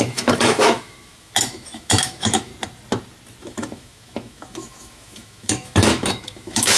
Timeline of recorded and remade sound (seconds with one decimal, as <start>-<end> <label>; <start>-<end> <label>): 0.0-2.5 remade; 2.5-3.4 recorded; 3.4-6.8 remade